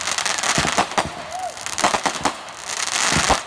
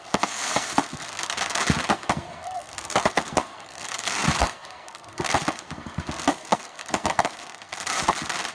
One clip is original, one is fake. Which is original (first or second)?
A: first